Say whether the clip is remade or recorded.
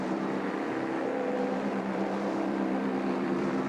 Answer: remade